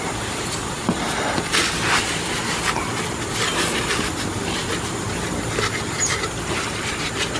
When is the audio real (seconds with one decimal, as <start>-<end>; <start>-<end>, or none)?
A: 0.0-7.4